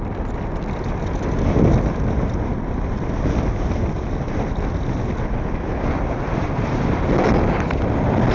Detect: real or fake real